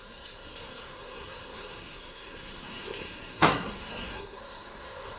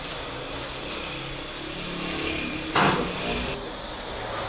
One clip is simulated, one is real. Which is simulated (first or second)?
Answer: first